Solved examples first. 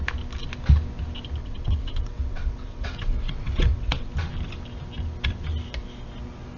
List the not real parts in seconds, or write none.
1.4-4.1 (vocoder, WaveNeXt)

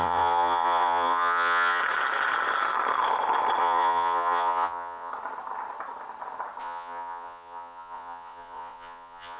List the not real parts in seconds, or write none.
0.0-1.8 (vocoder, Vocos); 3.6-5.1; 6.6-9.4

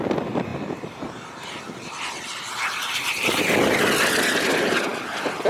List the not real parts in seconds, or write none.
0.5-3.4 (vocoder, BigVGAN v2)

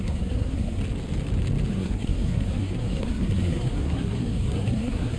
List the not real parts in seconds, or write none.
0.0-0.8 (codec, SNAC); 1.7-5.2